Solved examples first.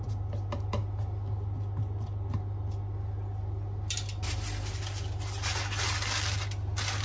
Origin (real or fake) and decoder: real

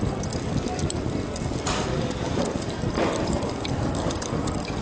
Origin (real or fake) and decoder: real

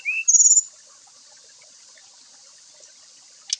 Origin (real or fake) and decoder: real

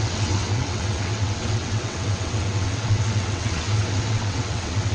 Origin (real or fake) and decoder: fake, vocoder, WaveNeXt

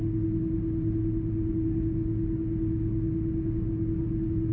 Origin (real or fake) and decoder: real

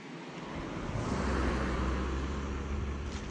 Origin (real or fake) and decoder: real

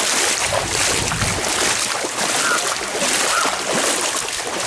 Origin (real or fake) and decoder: real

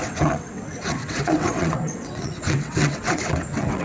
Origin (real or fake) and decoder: fake, vocoder, WaveNeXt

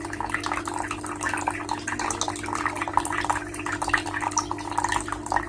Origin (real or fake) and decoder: real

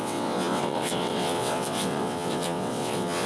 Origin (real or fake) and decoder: fake, vocoder, WaveNeXt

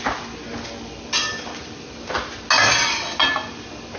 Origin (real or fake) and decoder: real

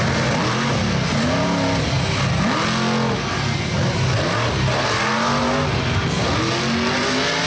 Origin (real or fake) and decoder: real